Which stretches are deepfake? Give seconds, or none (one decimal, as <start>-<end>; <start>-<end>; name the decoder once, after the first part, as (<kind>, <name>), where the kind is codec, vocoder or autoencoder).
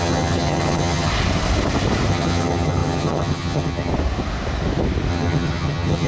0.0-1.1 (vocoder, HiFi-GAN); 2.1-3.9; 5.1-6.1